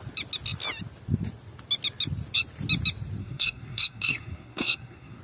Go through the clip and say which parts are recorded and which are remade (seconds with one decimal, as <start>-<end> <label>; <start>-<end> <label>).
0.0-3.2 recorded; 3.2-5.2 remade